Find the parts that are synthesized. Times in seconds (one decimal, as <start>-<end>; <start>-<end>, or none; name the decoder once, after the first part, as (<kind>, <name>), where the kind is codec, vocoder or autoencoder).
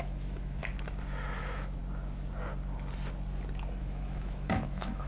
0.0-0.6 (autoencoder, DAC-VAE); 1.4-1.8; 3.8-5.1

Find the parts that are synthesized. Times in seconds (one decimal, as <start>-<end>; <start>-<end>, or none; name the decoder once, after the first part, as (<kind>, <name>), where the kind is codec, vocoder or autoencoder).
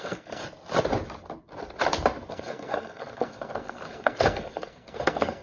0.0-0.4 (codec, SNAC); 2.3-5.4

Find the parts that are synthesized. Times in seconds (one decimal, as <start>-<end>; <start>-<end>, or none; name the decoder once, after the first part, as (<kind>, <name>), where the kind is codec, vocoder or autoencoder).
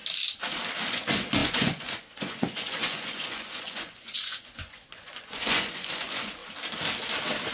0.9-6.4 (vocoder, Vocos)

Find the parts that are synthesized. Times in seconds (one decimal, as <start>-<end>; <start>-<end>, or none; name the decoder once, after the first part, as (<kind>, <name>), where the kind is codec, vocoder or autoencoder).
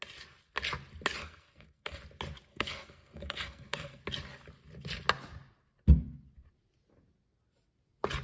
1.2-2.0 (codec, SNAC); 2.5-4.0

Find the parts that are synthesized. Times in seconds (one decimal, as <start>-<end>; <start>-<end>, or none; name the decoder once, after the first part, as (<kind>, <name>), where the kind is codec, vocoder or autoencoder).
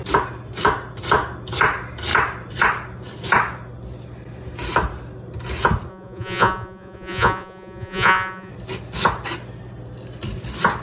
5.9-8.5 (vocoder, Vocos)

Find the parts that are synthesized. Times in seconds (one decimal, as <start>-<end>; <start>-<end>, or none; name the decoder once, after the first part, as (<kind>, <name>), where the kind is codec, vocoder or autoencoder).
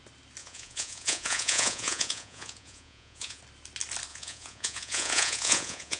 0.4-3.4 (vocoder, Vocos); 4.1-6.0